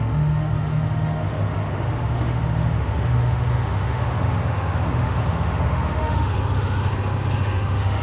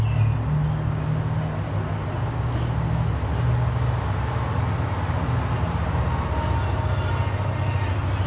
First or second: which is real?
second